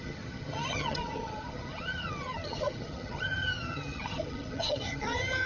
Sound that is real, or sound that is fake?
fake